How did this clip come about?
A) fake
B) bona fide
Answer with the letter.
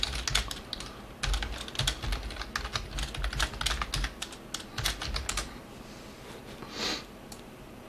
B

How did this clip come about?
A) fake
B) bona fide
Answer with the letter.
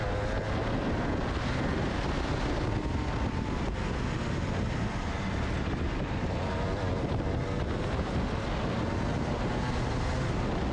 B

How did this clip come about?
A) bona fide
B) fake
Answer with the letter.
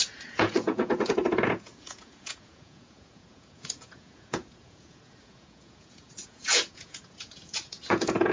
B